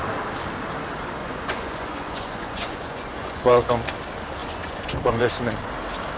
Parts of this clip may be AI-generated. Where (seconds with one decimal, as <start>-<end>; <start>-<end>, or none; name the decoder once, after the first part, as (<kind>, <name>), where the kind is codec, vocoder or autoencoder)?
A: 1.2-3.7 (vocoder, Vocos); 4.4-5.2